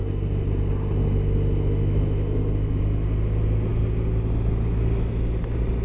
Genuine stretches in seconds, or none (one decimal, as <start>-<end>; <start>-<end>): 0.0-5.8

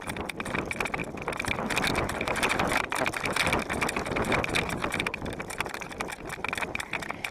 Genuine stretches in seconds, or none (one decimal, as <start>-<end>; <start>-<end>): 0.0-7.3

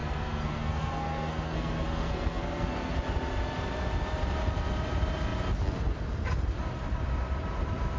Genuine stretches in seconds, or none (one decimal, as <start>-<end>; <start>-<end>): 3.0-8.0

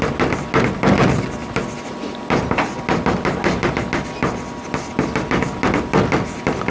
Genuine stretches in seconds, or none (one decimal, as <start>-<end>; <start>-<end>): 0.0-6.7